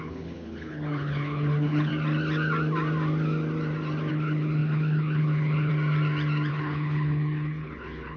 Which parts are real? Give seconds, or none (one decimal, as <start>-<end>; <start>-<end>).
1.9-4.1; 5.7-6.5